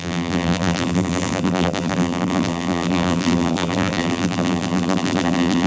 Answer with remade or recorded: remade